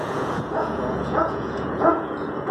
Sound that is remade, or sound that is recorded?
remade